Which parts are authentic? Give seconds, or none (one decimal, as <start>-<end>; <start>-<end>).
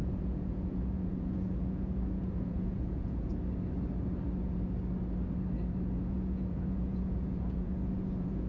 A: 3.3-6.1